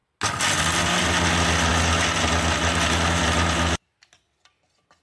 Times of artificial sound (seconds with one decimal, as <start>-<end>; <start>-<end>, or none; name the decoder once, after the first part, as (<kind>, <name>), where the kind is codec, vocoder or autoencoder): none